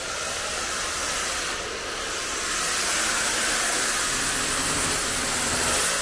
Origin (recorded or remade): recorded